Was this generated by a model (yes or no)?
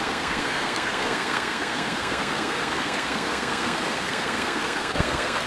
yes